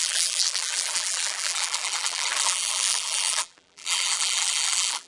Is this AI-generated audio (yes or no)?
yes